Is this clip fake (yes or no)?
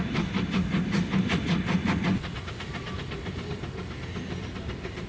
no